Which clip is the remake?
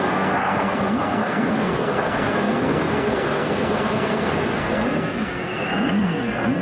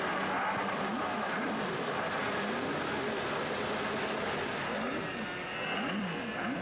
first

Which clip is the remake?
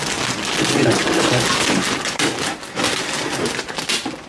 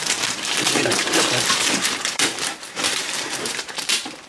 second